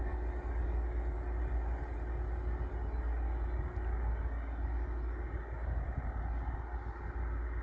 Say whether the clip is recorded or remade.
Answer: recorded